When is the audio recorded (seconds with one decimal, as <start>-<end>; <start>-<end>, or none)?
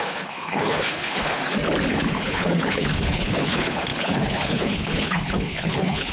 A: 1.4-1.9